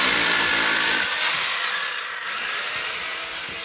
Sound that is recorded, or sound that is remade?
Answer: recorded